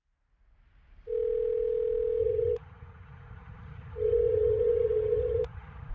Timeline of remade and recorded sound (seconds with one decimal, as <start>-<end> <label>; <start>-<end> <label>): 0.0-2.2 recorded; 2.2-5.9 remade